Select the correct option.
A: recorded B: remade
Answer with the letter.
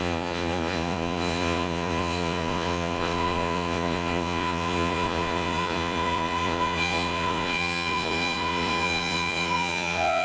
B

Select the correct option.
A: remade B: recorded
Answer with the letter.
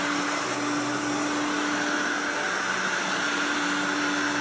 B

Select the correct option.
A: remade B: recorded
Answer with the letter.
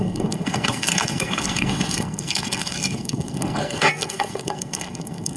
A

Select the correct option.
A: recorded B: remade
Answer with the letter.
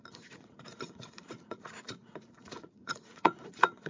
B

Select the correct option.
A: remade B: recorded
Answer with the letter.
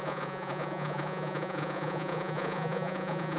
A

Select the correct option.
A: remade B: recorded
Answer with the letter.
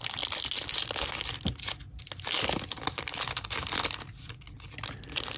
B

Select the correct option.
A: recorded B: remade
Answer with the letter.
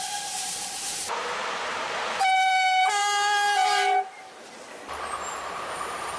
B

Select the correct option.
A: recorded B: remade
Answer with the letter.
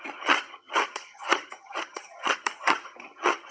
B